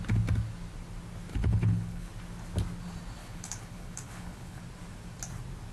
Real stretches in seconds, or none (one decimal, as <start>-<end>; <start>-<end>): 0.0-1.3; 2.1-3.2; 4.6-5.7